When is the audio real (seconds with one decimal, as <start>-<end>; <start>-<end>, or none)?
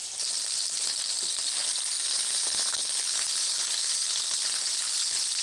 0.0-2.1